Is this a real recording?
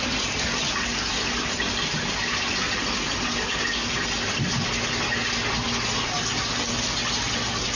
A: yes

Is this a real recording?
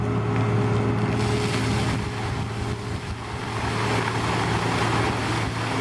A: yes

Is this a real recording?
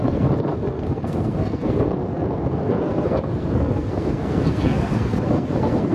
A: no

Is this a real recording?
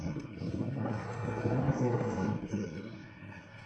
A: no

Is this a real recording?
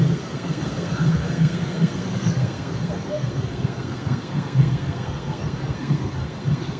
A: no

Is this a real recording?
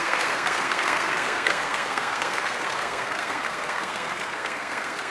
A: no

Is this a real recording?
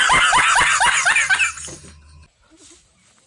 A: yes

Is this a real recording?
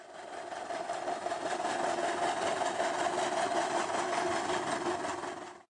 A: yes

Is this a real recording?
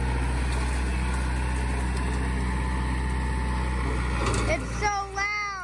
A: yes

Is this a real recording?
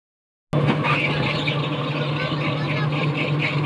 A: yes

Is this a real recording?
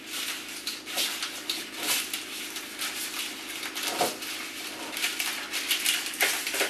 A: yes